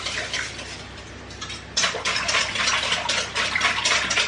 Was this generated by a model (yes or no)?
no